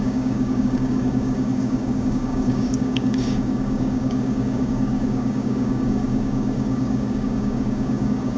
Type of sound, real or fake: fake